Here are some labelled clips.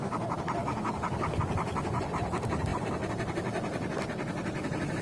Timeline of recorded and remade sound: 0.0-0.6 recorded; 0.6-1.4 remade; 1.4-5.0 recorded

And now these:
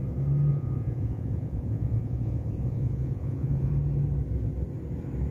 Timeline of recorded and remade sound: 0.0-0.5 recorded; 0.5-3.7 remade; 3.7-5.3 recorded

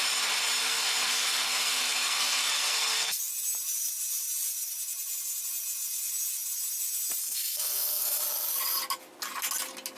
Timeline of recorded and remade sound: 0.0-0.6 recorded; 0.6-3.2 remade; 3.2-7.2 recorded; 7.2-8.2 remade; 8.2-10.0 recorded

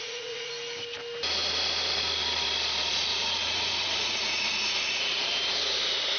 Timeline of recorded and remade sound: 0.0-0.5 remade; 0.5-3.1 recorded; 3.1-5.2 remade; 5.2-6.2 recorded